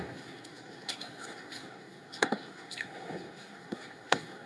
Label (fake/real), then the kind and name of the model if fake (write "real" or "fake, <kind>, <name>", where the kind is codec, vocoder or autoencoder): fake, codec, SNAC